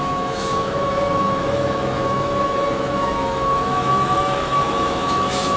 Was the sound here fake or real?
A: fake